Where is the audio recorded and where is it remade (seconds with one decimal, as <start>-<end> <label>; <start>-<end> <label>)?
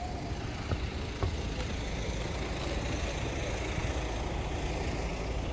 0.0-5.5 recorded